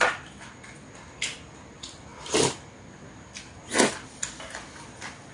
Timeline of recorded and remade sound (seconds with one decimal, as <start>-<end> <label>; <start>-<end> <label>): 0.0-5.3 recorded